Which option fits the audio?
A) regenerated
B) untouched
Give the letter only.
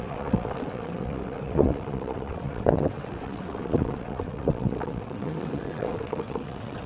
A